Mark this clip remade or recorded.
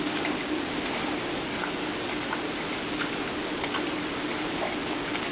recorded